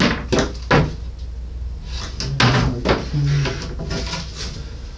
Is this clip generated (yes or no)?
no